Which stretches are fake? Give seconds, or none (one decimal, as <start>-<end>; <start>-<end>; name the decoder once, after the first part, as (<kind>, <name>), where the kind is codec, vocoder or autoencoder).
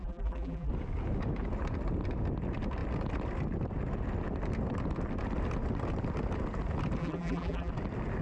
0.0-0.7 (vocoder, BigVGAN v2); 7.0-7.7